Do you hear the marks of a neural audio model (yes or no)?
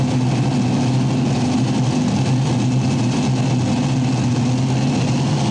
no